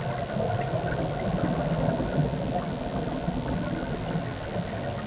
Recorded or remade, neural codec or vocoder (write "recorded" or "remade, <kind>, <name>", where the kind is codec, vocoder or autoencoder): recorded